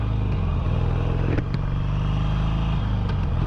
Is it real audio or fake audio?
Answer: real